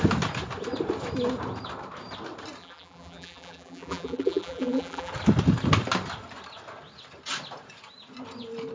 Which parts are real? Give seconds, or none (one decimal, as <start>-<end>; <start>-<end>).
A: 0.0-2.6; 5.1-8.7